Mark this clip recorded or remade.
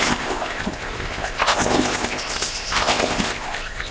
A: remade